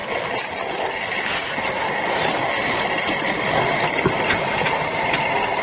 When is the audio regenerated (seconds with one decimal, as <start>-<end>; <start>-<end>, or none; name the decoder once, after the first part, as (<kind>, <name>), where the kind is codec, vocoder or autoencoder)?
none

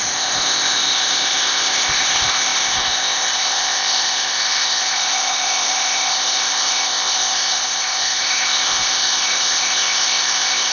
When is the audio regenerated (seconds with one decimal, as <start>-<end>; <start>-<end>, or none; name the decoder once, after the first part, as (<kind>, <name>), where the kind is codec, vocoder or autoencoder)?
0.0-10.7 (codec, ZipCodec)